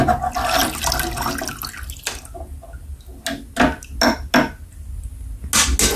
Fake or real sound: real